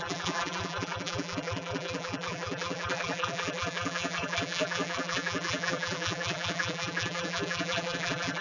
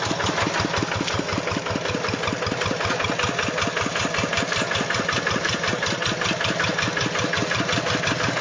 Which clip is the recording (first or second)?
second